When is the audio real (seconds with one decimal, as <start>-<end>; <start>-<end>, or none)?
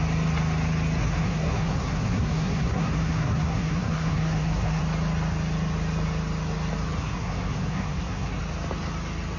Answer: 0.0-1.0; 4.8-7.0; 8.4-9.4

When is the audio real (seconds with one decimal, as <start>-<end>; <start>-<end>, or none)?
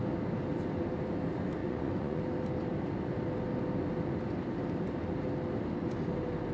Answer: 0.0-1.6; 2.2-6.5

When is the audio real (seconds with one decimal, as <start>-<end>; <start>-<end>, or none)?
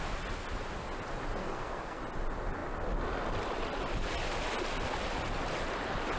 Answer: 0.0-1.4; 2.0-6.2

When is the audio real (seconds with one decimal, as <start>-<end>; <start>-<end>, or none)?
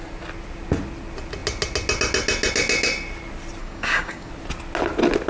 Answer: 0.0-3.6; 4.3-5.3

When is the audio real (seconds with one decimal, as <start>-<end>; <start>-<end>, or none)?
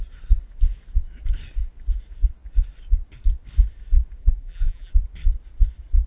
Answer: 0.0-4.2; 4.9-6.1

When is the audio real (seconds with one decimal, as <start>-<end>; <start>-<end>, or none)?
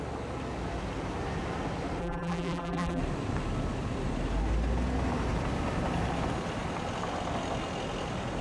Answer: 0.0-2.0; 3.0-8.4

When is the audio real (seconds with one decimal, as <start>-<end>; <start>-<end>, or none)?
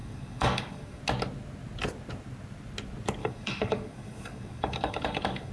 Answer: 1.0-3.2